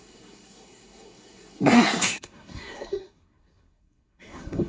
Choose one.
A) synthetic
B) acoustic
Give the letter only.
A